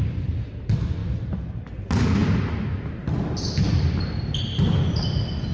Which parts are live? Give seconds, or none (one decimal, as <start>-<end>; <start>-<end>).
0.0-5.5